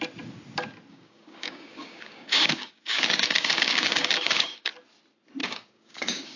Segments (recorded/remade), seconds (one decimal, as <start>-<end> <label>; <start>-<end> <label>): 0.0-0.9 recorded; 0.9-4.7 remade; 4.7-5.4 recorded; 5.4-6.4 remade